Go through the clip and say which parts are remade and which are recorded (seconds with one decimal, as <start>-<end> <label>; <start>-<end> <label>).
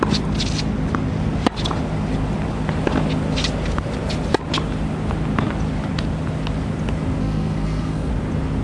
0.0-7.2 recorded; 7.2-8.1 remade; 8.1-8.6 recorded